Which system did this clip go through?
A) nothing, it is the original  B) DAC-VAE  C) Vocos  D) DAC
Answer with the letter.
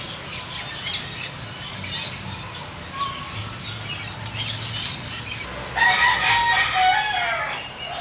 A